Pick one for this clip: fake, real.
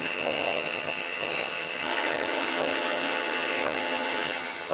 fake